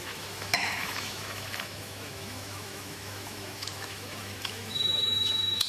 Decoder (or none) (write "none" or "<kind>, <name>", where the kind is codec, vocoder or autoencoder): autoencoder, DAC-VAE